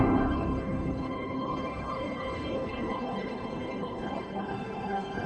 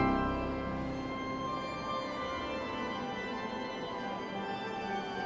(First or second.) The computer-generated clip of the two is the first